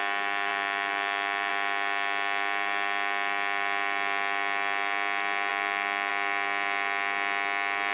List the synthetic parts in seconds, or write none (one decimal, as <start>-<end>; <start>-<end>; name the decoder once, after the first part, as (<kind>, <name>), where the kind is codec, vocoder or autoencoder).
none